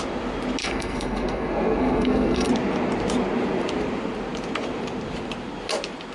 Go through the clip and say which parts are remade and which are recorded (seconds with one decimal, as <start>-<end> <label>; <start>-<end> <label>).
0.0-0.6 recorded; 0.6-2.5 remade; 2.5-6.1 recorded